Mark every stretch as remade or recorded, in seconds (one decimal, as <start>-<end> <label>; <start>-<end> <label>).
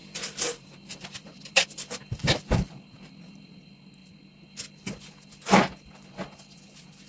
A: 0.0-3.5 remade; 3.5-7.1 recorded